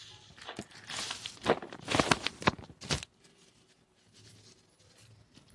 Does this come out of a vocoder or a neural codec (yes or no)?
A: no